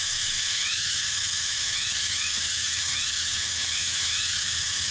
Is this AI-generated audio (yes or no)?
yes